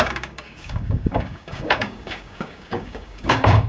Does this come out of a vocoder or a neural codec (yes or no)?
yes